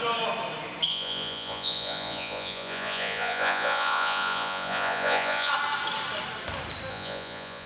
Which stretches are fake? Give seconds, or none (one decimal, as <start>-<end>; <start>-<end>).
0.9-5.5; 6.9-7.7